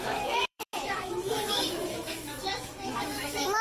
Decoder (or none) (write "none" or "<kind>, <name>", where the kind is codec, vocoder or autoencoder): autoencoder, DAC-VAE